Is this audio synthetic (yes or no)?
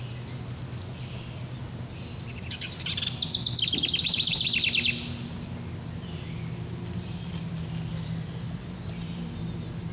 no